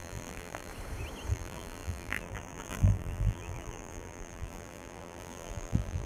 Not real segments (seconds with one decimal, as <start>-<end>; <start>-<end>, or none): 0.0-0.7; 1.3-6.1